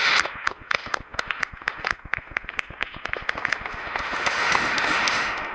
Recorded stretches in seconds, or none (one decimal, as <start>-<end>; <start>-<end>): none